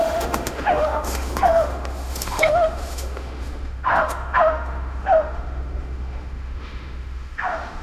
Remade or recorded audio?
remade